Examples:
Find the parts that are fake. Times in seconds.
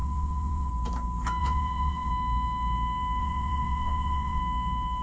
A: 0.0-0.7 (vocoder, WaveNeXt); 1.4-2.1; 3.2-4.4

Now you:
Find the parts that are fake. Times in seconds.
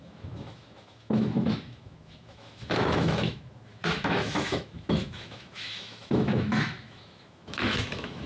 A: 0.0-8.3 (autoencoder, DAC-VAE)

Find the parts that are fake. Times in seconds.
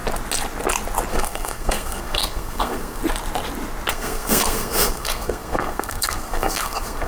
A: 1.1-3.0 (codec, SNAC); 3.9-7.1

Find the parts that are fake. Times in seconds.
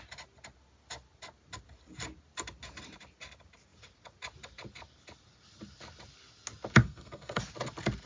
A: 6.8-7.4 (codec, SNAC)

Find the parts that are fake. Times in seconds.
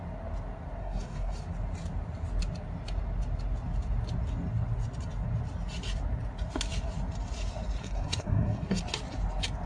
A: 0.8-1.4 (codec, SNAC); 7.8-8.8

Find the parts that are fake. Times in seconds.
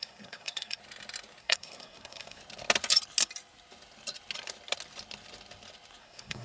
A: 0.0-0.8 (codec, SNAC); 1.4-2.4; 6.0-6.4